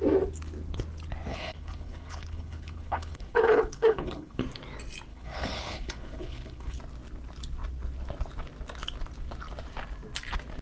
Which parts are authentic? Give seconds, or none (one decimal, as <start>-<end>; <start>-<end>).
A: 0.0-1.3; 4.4-5.1; 6.8-10.6